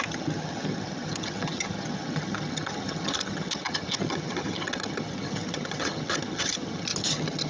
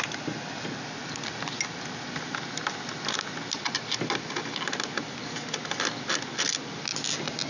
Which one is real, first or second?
second